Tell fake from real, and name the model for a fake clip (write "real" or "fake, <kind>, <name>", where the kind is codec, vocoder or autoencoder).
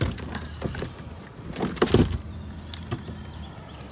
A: real